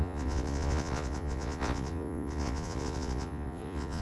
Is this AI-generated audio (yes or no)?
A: yes